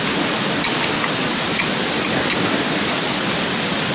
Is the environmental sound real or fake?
real